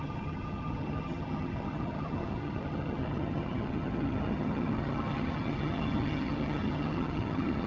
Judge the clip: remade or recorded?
remade